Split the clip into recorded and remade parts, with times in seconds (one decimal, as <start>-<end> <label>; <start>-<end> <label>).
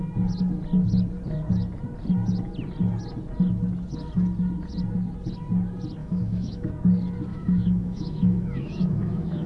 0.0-6.0 recorded; 6.0-6.7 remade; 6.7-7.3 recorded; 7.3-9.5 remade